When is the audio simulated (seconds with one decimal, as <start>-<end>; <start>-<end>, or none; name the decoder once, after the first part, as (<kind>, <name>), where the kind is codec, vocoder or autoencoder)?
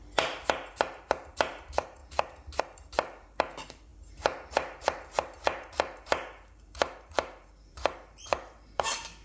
0.7-2.0 (vocoder, BigVGAN v2); 2.6-9.2